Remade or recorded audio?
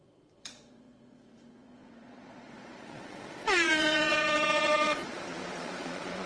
remade